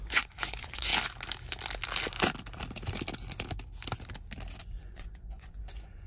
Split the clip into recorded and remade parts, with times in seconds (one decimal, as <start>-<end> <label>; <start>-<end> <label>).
0.0-0.9 remade; 0.9-4.6 recorded; 4.6-6.1 remade